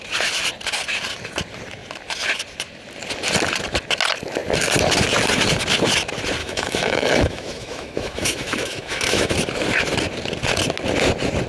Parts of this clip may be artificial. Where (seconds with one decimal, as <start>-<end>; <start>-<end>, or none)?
6.4-9.3

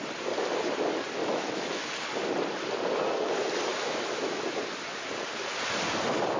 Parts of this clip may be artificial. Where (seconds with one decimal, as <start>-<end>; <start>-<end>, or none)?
1.2-1.9; 3.7-4.6

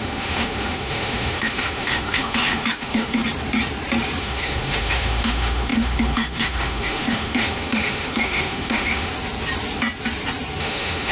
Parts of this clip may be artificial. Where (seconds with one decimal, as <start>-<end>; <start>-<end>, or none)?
0.0-3.2; 4.2-9.1; 10.6-11.1

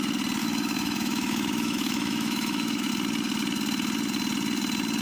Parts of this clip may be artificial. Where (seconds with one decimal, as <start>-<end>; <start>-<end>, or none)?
0.4-2.9